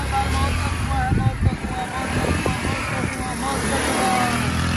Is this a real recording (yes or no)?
yes